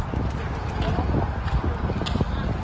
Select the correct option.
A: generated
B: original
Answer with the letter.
B